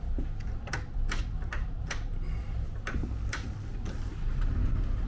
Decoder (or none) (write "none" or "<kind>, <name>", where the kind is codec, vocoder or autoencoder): none